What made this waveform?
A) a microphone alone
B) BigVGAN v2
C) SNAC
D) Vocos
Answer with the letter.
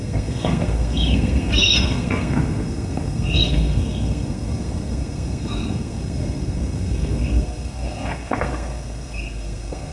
C